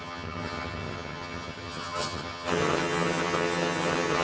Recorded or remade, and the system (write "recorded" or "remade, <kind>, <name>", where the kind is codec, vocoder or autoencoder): remade, vocoder, HiFi-GAN